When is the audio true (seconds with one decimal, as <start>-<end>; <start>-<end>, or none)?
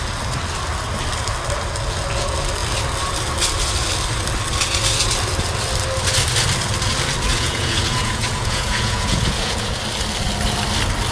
0.0-7.3; 9.8-11.1